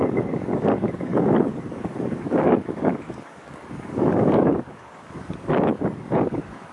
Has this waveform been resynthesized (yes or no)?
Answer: yes